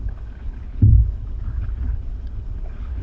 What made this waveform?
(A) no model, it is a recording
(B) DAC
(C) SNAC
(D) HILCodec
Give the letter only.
D